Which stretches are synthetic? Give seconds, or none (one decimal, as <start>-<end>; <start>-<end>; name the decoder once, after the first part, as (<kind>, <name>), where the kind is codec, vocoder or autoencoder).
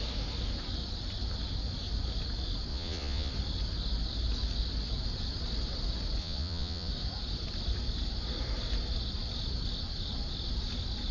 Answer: 2.7-3.3 (vocoder, Vocos); 6.2-6.9